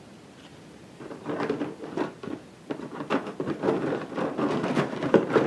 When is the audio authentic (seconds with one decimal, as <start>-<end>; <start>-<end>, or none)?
0.0-5.5